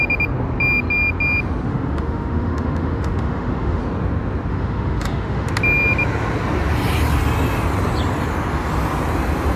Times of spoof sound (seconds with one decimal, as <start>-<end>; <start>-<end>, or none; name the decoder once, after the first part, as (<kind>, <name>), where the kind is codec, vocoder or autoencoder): 1.7-3.8 (autoencoder, DAC-VAE); 4.5-5.5